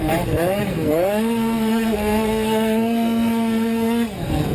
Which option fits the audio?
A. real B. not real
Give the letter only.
B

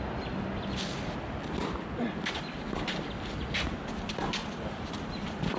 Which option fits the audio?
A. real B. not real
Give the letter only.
A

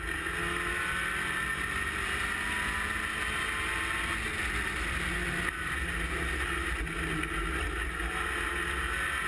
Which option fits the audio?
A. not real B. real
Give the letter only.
B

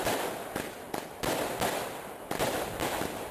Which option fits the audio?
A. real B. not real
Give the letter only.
A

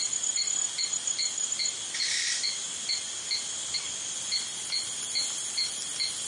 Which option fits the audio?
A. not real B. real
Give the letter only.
B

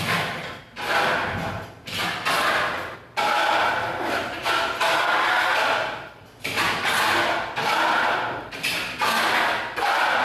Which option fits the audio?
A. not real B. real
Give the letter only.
B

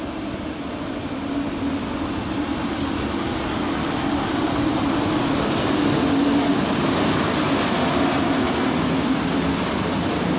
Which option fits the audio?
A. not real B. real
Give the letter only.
B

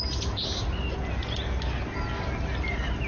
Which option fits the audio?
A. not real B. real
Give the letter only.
B